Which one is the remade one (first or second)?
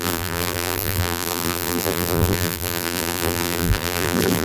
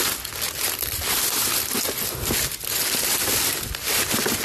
first